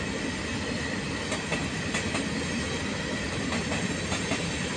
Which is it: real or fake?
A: real